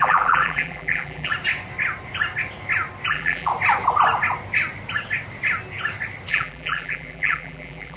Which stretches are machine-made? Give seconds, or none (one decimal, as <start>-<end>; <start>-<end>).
0.0-1.3; 3.1-3.5; 6.3-8.0